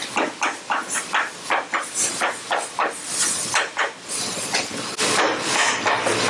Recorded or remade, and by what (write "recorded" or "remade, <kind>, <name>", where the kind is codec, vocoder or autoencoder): recorded